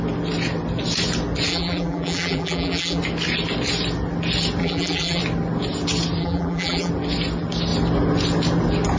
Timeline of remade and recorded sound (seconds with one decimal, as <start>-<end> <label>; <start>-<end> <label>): 0.0-1.5 recorded; 1.5-3.0 remade; 3.0-4.6 recorded; 4.6-5.2 remade; 5.2-6.2 recorded; 6.2-6.9 remade; 6.9-9.0 recorded